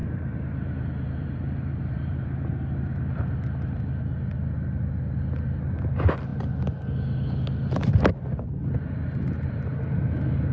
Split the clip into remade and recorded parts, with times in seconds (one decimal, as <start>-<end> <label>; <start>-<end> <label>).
0.0-2.2 remade; 2.2-10.5 recorded